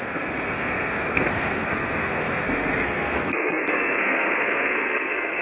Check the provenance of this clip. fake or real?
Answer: fake